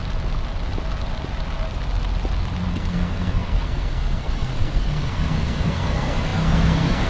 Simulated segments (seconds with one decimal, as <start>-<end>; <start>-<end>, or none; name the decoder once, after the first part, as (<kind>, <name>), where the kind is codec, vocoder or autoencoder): 2.7-7.1 (codec, SNAC)